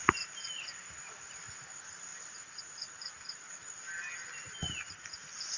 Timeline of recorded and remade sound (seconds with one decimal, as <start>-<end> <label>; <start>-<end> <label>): 0.0-5.6 recorded